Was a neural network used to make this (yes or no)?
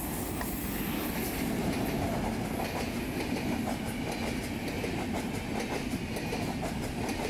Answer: no